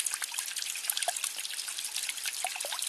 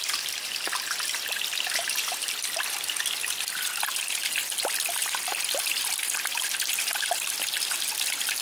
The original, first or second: first